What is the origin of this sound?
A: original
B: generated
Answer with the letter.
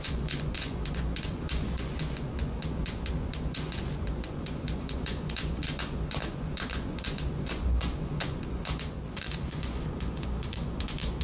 B